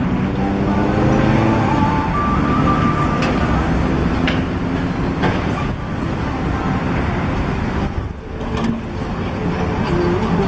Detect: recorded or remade recorded